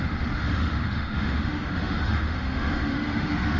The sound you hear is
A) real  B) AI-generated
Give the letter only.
B